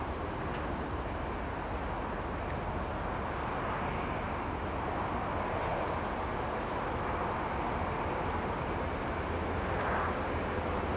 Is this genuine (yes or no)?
yes